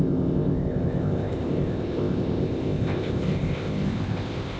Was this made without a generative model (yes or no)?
no